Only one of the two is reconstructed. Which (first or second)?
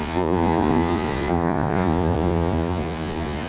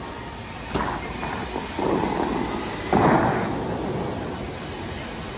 first